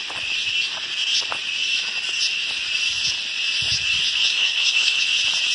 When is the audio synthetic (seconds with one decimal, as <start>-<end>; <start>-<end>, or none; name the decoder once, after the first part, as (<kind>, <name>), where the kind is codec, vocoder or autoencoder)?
4.3-5.0 (codec, SNAC)